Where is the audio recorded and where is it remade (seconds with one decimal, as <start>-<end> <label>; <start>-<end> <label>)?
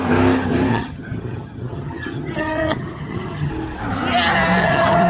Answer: 0.0-0.7 recorded; 0.7-3.5 remade; 3.5-4.6 recorded; 4.6-5.1 remade